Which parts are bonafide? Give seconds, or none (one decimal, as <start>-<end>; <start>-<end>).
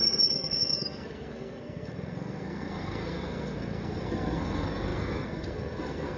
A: none